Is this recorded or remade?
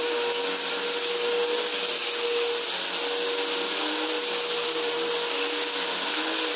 recorded